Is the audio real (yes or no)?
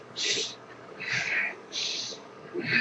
no